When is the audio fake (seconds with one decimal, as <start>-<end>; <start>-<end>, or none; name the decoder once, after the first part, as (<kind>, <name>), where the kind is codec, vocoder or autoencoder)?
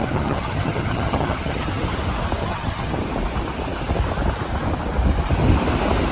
0.0-1.8 (vocoder, HiFi-GAN); 2.4-3.0